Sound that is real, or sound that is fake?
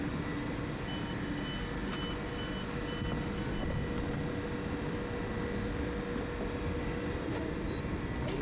real